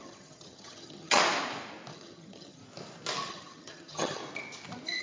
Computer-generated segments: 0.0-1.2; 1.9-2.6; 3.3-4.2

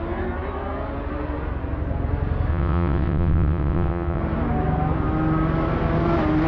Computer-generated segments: 2.5-4.2

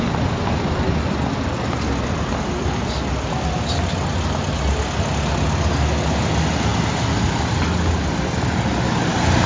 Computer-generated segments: none

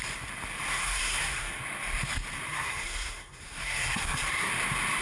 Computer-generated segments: 0.7-1.6; 2.5-4.5

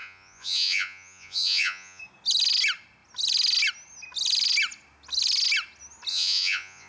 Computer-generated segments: 0.0-2.0; 6.1-6.9

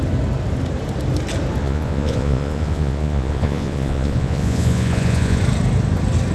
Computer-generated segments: 1.6-5.4